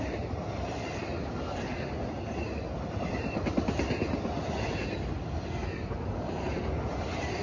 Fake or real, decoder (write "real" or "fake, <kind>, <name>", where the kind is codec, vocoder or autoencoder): real